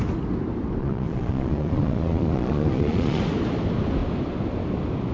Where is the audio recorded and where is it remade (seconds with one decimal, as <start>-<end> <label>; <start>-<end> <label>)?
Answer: 0.0-0.8 recorded; 0.8-3.2 remade; 3.2-5.1 recorded